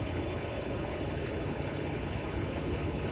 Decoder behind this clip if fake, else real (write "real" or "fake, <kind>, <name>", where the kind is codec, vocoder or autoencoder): fake, codec, HILCodec